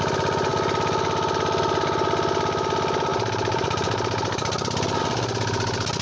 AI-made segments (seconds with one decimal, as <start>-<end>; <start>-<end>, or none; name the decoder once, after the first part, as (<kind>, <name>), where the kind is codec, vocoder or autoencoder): 3.1-5.0 (vocoder, BigVGAN v2)